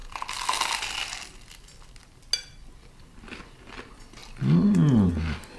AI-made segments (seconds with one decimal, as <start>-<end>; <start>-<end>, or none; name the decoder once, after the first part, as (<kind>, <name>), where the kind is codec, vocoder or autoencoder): none